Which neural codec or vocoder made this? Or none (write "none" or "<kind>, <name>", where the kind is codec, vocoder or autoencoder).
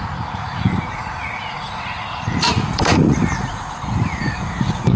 vocoder, Vocos